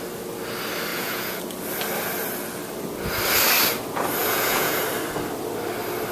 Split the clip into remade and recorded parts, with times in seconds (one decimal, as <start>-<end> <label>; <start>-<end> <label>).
0.0-0.9 recorded; 0.9-1.4 remade; 1.4-4.2 recorded; 4.2-4.8 remade; 4.8-6.1 recorded